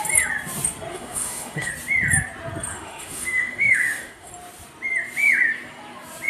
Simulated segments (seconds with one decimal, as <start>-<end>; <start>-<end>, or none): 0.9-1.7; 2.7-4.3